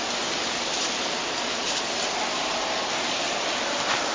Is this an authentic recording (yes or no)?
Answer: yes